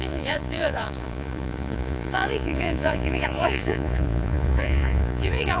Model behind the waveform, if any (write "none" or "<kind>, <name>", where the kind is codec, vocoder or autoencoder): vocoder, Vocos